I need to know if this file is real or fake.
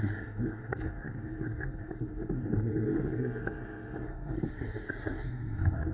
fake